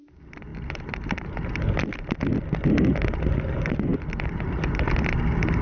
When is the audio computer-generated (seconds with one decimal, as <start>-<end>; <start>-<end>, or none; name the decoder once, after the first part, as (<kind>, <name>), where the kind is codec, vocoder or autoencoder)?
0.5-1.3 (vocoder, BigVGAN v2); 3.9-4.7